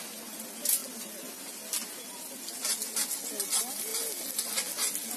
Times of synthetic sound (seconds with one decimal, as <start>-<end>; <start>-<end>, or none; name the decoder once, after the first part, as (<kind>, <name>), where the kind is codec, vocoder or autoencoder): none